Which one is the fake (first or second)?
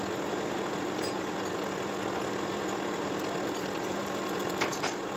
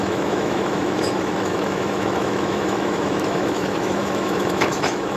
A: second